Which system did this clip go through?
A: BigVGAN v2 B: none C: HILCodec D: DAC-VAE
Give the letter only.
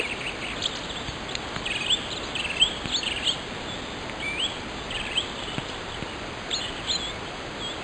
B